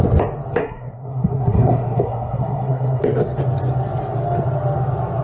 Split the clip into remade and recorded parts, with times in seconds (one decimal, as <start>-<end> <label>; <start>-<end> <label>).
0.0-0.6 recorded; 0.6-3.0 remade; 3.0-5.2 recorded